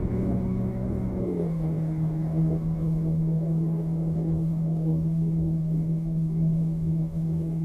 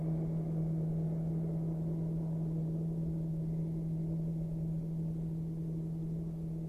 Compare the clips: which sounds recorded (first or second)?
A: second